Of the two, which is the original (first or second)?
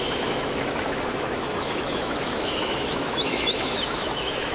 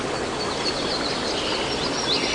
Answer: second